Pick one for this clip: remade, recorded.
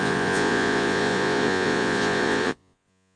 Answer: remade